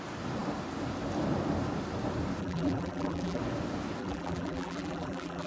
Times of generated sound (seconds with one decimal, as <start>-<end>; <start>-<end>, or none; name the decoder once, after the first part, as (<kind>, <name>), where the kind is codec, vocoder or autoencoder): 2.4-3.4 (vocoder, BigVGAN v2); 4.0-5.5